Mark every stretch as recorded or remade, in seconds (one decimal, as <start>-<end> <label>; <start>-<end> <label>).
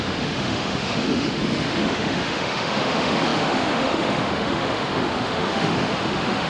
0.0-6.5 remade